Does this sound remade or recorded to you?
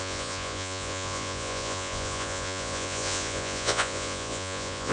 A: remade